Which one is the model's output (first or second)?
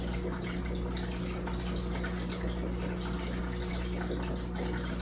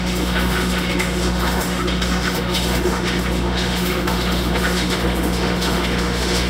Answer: second